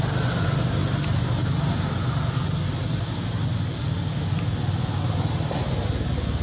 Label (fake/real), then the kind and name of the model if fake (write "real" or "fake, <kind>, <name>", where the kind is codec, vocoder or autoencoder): real